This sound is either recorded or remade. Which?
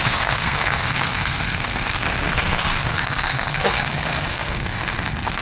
remade